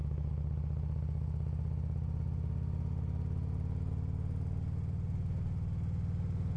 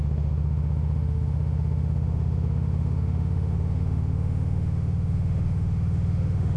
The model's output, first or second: second